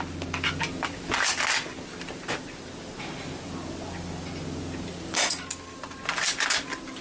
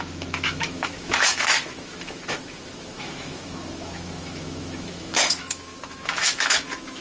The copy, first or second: second